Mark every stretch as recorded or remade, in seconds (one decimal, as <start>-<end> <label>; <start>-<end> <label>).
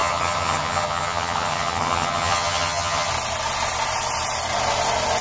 0.0-3.1 remade; 3.1-5.2 recorded